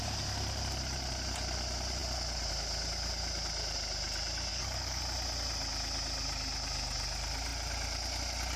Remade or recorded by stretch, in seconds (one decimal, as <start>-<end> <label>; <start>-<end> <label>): 0.0-4.5 recorded; 4.5-5.0 remade; 5.0-8.6 recorded